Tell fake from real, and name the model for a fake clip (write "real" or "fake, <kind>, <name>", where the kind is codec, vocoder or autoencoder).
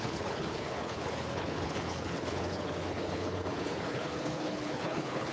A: fake, codec, HILCodec